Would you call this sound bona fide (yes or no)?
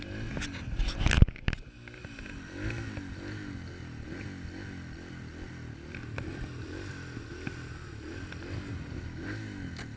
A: yes